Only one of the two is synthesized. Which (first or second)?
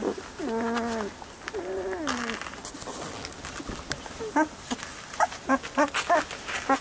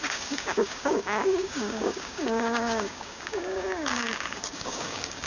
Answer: second